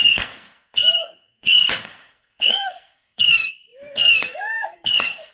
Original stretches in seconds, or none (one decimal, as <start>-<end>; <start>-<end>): none